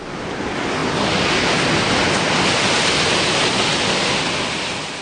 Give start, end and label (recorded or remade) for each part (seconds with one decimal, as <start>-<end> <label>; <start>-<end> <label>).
0.0-5.0 recorded